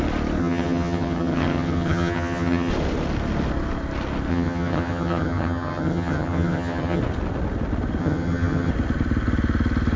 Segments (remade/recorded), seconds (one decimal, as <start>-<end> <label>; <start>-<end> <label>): 0.0-0.4 recorded; 0.4-2.7 remade; 2.7-4.3 recorded; 4.3-7.0 remade; 7.0-8.0 recorded; 8.0-8.7 remade; 8.7-10.0 recorded